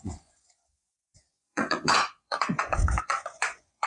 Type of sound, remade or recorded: remade